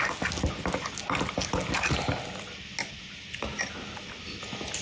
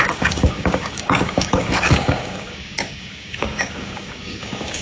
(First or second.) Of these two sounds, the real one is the first